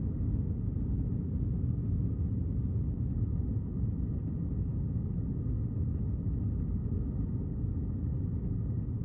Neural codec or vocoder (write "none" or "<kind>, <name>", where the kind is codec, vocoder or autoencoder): none